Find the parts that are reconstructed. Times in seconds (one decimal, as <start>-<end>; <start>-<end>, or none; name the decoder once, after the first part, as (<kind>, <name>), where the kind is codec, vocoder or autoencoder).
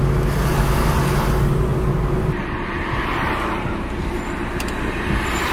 0.0-1.7 (vocoder, BigVGAN v2); 3.3-5.5